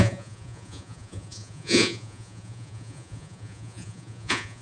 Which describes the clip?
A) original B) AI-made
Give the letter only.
B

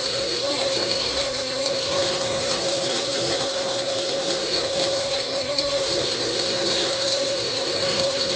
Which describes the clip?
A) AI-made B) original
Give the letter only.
A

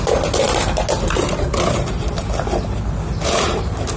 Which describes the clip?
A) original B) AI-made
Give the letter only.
A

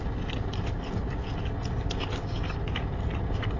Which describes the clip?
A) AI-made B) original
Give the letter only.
B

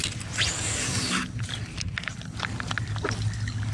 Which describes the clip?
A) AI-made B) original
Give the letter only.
B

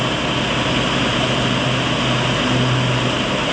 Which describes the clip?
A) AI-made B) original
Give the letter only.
B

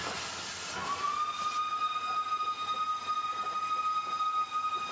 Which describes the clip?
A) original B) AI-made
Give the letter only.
A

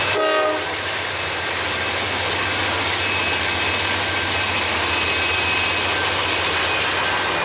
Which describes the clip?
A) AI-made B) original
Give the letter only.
B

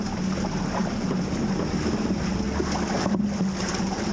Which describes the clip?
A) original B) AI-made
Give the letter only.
A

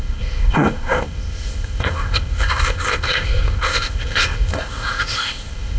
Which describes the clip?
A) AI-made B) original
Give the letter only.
A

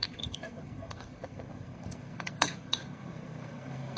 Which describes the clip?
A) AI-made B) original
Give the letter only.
A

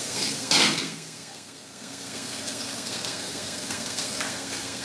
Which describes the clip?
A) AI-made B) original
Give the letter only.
A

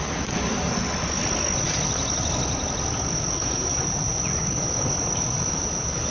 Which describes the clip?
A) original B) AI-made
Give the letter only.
A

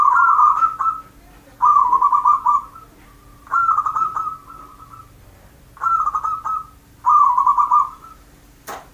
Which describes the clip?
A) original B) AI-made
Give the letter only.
A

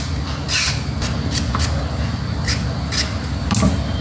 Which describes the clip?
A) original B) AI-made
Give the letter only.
A